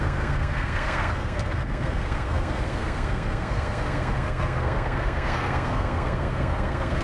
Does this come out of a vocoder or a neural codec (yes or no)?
yes